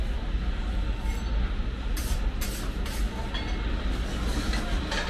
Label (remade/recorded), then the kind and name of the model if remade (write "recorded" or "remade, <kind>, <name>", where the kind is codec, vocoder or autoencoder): recorded